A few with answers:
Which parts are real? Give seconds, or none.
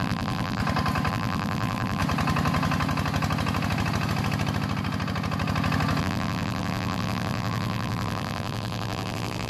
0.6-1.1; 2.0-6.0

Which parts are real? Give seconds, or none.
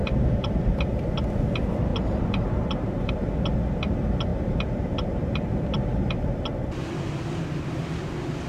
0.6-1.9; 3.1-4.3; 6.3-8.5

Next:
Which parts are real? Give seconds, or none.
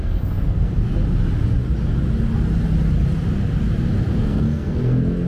0.9-4.1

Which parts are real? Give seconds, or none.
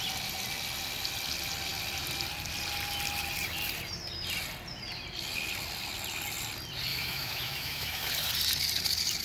0.0-6.9; 8.1-9.2